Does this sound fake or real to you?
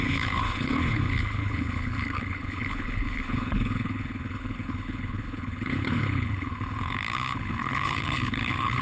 fake